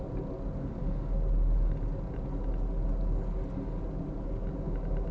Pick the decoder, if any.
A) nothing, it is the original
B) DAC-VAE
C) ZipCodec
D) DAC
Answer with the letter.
A